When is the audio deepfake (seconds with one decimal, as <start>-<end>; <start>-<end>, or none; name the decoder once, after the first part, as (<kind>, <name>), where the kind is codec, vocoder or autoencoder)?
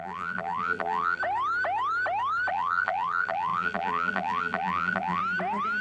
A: 0.0-1.2 (vocoder, BigVGAN v2); 2.5-5.2